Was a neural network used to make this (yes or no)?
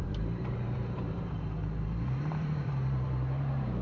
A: yes